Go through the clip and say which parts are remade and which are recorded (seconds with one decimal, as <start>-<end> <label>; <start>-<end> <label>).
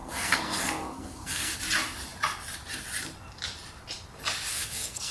0.0-1.6 remade; 1.6-4.5 recorded; 4.5-5.1 remade